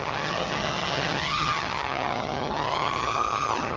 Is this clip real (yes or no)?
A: no